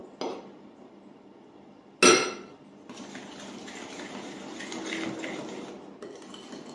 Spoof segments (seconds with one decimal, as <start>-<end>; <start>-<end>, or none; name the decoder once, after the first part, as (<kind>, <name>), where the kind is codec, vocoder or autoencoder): none